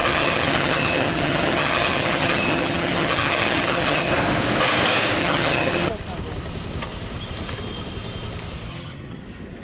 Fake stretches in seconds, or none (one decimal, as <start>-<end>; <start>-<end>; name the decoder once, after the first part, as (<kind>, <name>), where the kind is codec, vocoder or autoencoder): 0.0-4.1 (vocoder, HiFi-GAN); 5.2-5.9; 8.7-9.2